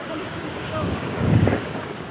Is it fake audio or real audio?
fake